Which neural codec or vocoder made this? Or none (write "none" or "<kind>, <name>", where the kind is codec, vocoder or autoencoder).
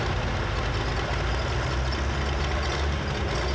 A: none